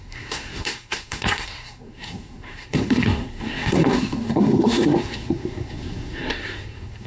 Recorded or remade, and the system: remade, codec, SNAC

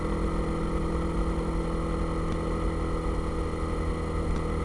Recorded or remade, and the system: recorded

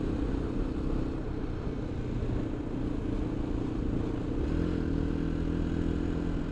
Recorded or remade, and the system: recorded